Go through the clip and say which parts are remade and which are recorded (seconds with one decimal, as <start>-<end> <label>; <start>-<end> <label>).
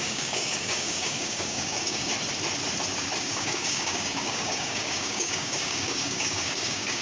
0.0-2.1 remade; 2.1-3.2 recorded; 3.2-7.0 remade